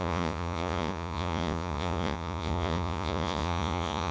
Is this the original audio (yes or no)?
no